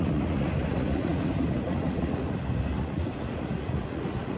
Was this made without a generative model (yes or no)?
no